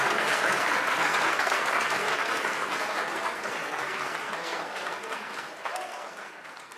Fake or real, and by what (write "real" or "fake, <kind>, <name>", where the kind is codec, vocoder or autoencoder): fake, codec, SNAC